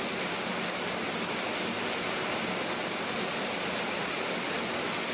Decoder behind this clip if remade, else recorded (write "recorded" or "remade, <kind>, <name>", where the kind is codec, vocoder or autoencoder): recorded